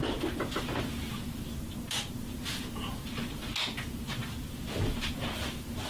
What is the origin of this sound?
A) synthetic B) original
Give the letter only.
B